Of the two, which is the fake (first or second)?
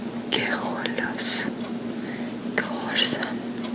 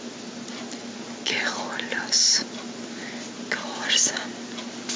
first